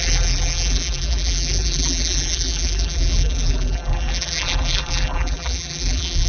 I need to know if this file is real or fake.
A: fake